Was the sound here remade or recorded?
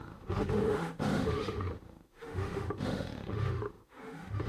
remade